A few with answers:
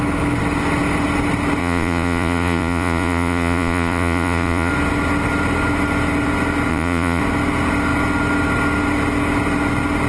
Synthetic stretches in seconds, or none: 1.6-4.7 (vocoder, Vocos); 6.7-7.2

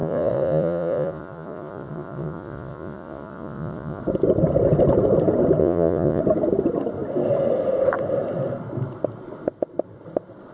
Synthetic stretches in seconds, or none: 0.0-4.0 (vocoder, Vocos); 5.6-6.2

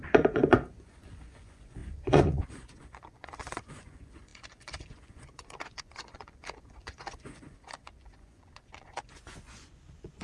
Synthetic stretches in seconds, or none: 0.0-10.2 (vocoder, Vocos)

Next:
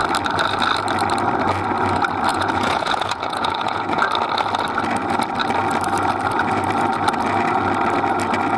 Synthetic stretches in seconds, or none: 2.3-4.0 (vocoder, Vocos)